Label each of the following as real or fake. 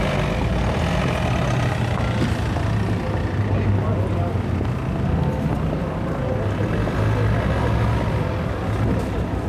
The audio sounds real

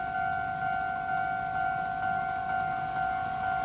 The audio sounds real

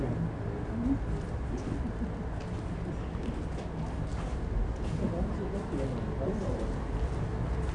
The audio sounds real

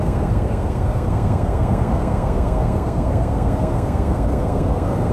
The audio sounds fake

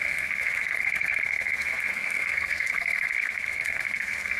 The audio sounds fake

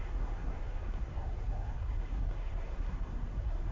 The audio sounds fake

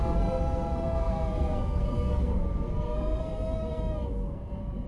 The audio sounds fake